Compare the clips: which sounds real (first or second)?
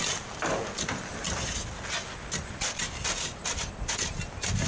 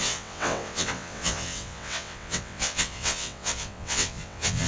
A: first